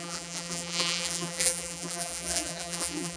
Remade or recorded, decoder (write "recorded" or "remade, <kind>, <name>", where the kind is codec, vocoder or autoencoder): remade, vocoder, BigVGAN v2